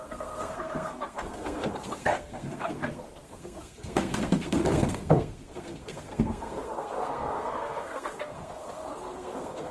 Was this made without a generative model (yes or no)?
no